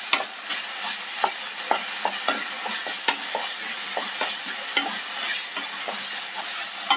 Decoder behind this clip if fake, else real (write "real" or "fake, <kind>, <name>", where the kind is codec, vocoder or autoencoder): real